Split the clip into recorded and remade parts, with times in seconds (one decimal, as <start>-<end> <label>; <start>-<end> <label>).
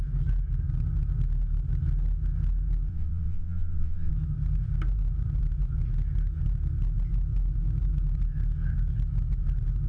0.0-2.9 recorded; 2.9-4.1 remade; 4.1-9.9 recorded